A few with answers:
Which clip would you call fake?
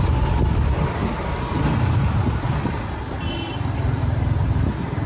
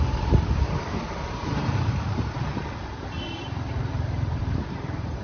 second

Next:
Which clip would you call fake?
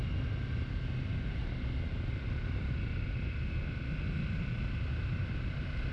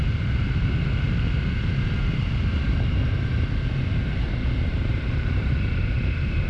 second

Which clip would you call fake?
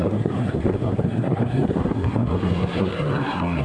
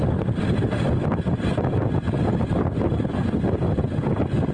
first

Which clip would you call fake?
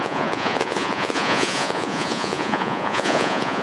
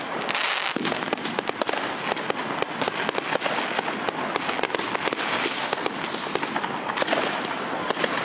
first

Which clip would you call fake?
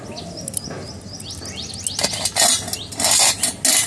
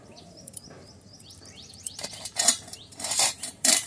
second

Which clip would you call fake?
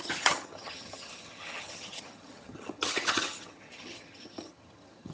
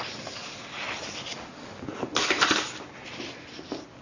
first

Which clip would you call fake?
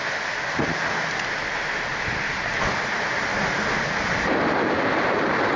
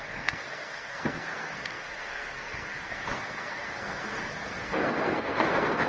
second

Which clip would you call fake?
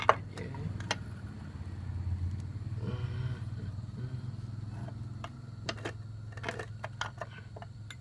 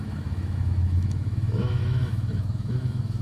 second